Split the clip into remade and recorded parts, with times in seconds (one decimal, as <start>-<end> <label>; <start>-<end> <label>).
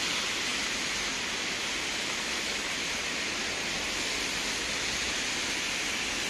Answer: 0.0-6.3 recorded